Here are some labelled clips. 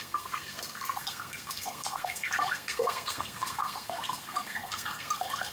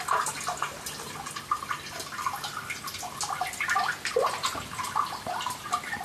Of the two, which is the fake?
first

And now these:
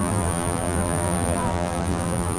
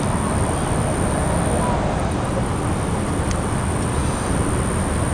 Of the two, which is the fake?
first